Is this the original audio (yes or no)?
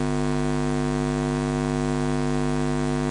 yes